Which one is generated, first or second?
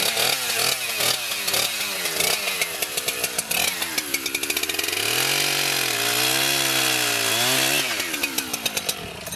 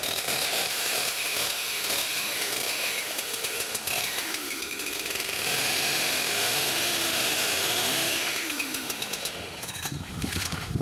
second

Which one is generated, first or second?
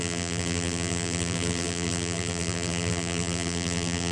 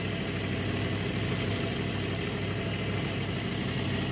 first